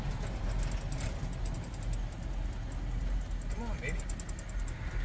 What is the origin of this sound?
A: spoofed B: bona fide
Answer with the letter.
B